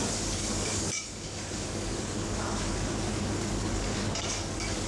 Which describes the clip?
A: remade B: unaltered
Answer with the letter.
A